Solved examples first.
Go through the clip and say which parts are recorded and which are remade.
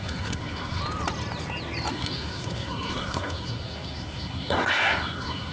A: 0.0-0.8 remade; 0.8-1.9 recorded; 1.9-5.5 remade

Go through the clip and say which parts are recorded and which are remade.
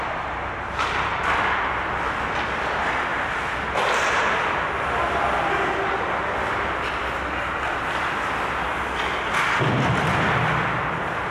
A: 0.0-11.3 recorded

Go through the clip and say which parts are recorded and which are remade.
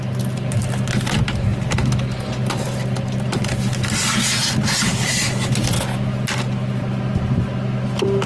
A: 0.0-8.3 recorded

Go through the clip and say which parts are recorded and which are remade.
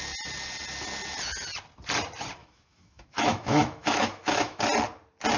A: 0.0-2.4 recorded; 2.4-4.6 remade; 4.6-5.4 recorded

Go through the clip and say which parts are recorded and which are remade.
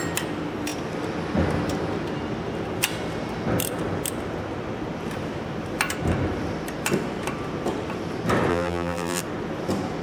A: 0.0-8.5 recorded; 8.5-9.2 remade; 9.2-10.0 recorded